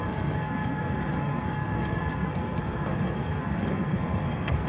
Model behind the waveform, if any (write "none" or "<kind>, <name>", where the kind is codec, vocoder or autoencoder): codec, SNAC